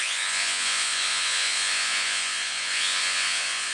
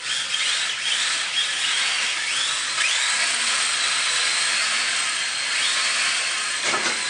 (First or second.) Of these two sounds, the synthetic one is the first